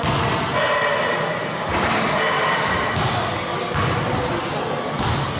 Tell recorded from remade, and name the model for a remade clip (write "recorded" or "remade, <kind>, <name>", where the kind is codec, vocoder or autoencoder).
recorded